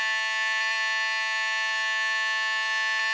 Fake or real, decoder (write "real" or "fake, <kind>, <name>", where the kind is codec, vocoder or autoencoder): real